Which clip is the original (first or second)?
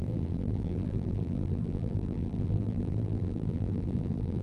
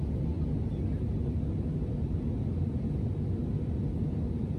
second